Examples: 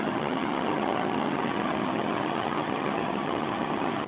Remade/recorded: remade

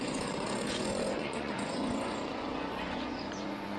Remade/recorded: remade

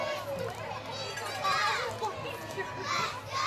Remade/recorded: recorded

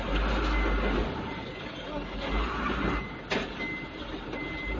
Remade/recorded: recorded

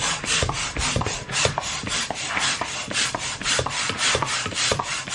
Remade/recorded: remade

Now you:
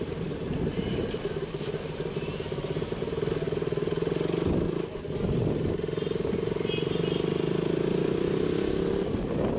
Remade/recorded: recorded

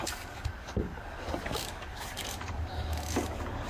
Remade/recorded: remade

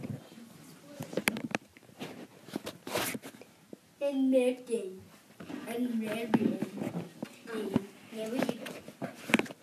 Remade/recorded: recorded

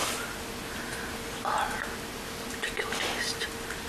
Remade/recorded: recorded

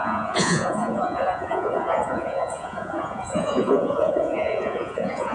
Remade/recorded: remade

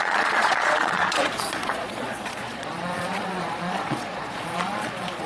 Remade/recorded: remade